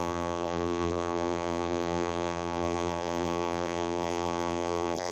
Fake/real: fake